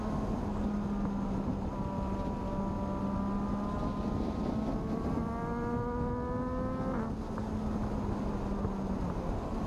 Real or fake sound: real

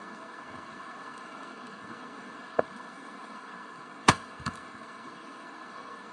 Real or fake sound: fake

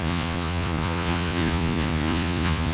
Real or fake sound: fake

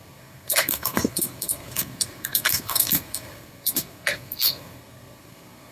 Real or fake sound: fake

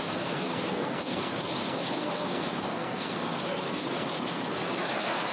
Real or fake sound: fake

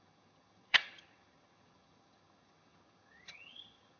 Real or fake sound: fake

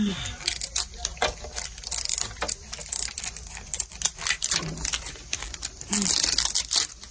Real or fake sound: real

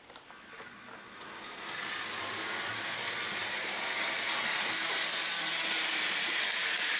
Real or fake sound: real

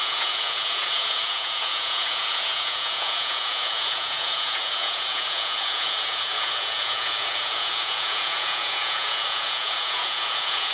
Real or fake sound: fake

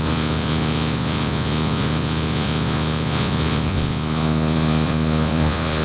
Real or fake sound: fake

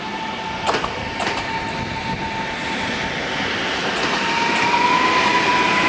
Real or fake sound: real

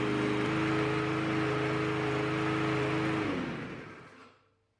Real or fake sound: real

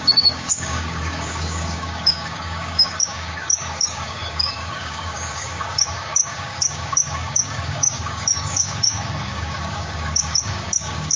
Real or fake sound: fake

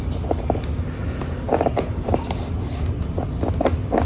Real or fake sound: real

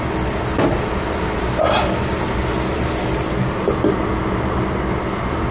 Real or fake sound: real